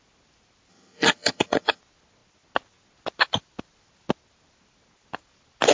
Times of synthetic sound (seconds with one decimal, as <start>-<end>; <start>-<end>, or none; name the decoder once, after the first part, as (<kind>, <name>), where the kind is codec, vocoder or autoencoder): 0.7-1.8 (vocoder, HiFi-GAN)